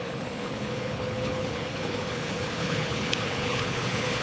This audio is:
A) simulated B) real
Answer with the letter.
A